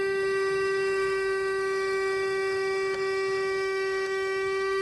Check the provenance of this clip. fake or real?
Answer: fake